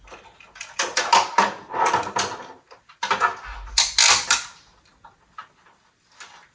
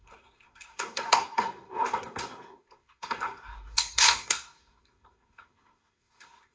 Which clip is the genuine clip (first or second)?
first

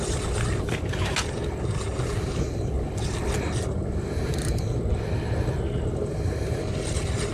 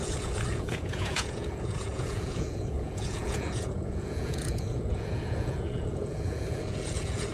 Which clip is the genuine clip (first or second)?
first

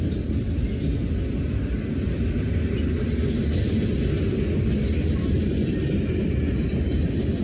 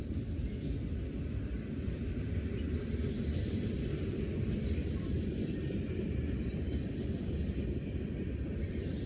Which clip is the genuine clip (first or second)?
first